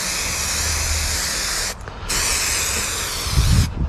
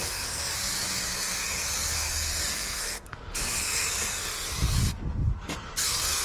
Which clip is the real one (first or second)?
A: first